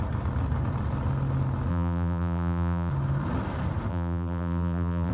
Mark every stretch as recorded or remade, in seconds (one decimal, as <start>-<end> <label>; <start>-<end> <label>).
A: 0.0-1.7 recorded; 1.7-2.9 remade; 2.9-3.9 recorded; 3.9-5.1 remade